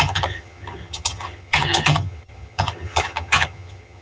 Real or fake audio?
fake